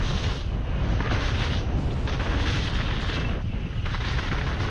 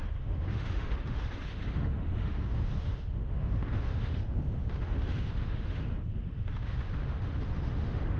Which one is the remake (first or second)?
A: second